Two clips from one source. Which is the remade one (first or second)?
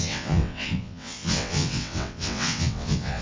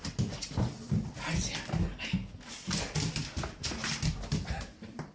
first